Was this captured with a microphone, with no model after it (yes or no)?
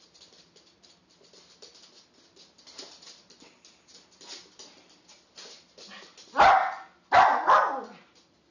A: yes